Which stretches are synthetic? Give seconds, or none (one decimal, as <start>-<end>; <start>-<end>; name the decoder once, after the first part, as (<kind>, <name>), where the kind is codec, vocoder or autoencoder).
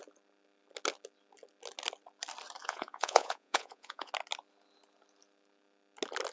2.6-4.1 (vocoder, Vocos)